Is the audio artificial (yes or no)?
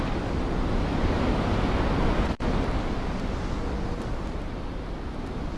no